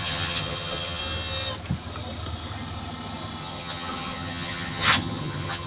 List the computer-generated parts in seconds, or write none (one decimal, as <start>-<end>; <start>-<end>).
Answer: 0.0-1.0; 3.4-5.7